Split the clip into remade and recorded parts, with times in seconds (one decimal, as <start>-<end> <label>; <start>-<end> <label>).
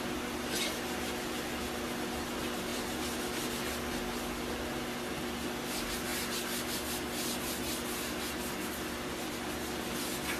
0.0-10.4 recorded